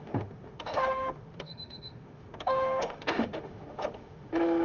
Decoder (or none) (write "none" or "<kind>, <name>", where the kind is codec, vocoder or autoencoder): autoencoder, DAC-VAE